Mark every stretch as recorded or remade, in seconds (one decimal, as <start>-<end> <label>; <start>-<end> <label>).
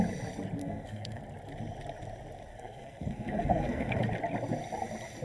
0.0-0.6 recorded; 0.6-1.2 remade; 1.2-2.5 recorded; 2.5-4.0 remade; 4.0-5.2 recorded